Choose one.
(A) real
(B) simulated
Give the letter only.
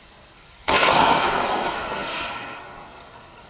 B